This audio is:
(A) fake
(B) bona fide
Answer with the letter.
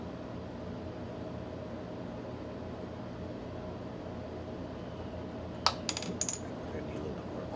B